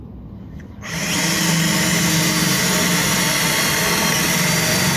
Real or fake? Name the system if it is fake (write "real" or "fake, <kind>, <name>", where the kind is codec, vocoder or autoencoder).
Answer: real